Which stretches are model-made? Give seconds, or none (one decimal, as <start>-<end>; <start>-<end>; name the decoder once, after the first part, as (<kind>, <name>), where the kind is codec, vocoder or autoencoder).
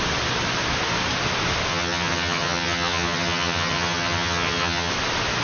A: 1.7-4.9 (vocoder, HiFi-GAN)